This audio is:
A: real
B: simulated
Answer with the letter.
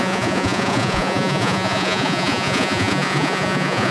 B